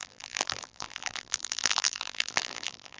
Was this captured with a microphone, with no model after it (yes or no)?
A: no